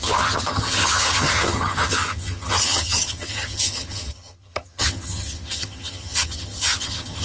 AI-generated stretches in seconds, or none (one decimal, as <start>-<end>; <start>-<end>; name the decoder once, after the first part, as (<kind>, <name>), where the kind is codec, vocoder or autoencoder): 0.0-7.2 (vocoder, HiFi-GAN)